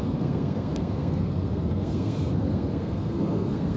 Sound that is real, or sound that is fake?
fake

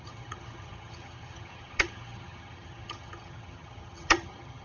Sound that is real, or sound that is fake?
fake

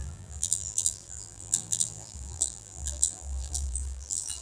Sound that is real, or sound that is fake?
fake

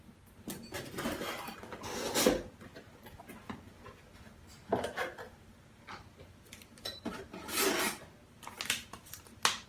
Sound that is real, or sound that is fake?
real